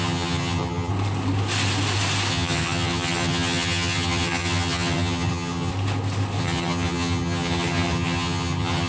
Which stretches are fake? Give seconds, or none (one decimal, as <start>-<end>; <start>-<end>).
0.0-0.9; 2.3-5.7; 6.4-8.9